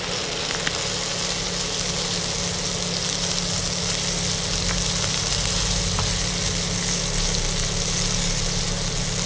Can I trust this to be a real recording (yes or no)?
yes